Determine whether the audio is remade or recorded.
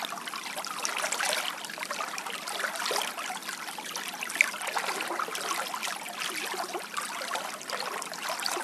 recorded